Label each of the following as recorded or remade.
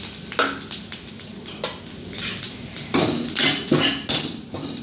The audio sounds recorded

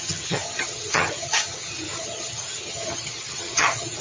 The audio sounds remade